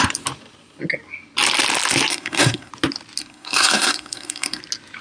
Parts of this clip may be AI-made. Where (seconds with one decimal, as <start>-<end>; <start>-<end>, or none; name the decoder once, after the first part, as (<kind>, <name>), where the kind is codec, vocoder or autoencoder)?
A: 2.1-2.7 (codec, SNAC); 3.2-4.6